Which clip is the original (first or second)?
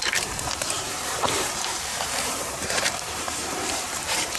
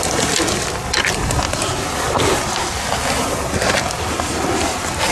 second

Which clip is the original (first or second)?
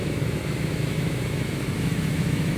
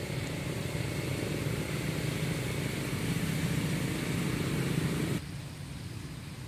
second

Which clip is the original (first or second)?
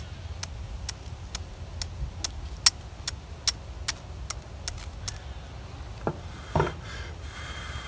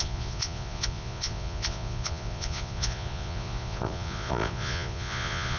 first